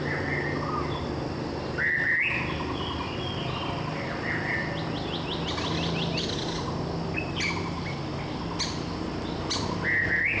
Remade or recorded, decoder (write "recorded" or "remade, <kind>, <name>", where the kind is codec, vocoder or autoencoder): recorded